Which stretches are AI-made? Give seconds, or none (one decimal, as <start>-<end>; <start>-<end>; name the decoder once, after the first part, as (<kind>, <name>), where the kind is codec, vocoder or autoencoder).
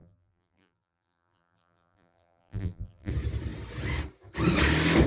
0.0-3.1 (vocoder, BigVGAN v2)